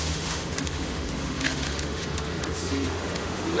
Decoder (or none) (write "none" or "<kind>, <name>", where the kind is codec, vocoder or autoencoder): autoencoder, DAC-VAE